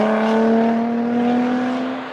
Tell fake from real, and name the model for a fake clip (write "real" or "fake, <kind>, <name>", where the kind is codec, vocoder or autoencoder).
real